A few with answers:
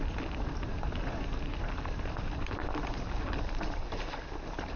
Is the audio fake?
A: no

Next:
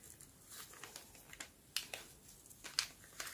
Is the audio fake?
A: no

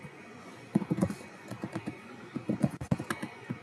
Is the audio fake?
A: yes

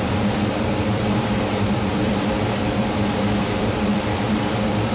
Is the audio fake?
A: yes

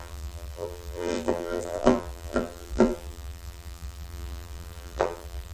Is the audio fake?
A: yes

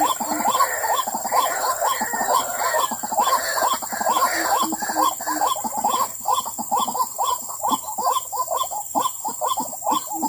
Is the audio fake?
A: no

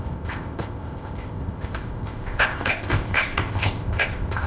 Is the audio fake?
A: yes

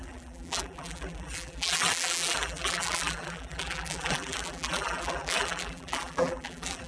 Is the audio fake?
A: yes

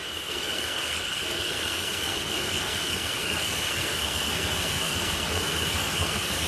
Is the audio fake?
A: yes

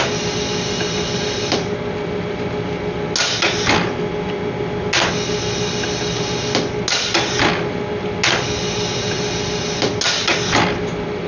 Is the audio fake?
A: no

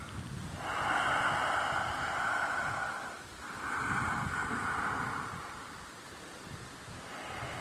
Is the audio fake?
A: no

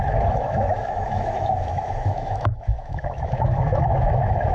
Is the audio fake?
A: yes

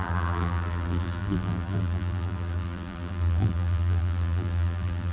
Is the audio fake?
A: yes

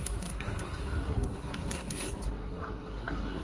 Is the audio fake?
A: yes